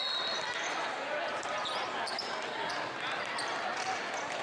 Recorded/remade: recorded